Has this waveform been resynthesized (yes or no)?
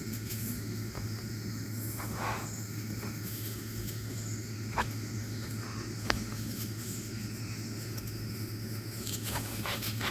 yes